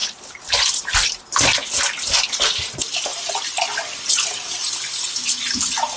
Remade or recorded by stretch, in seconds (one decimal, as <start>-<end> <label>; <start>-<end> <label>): 0.0-1.2 remade; 1.2-3.1 recorded; 3.1-5.3 remade; 5.3-6.0 recorded